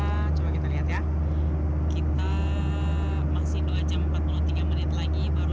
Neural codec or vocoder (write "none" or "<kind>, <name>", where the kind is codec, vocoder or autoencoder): none